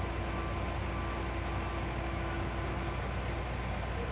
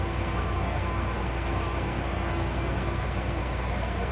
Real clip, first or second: first